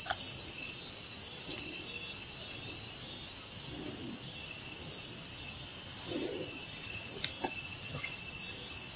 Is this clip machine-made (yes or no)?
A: no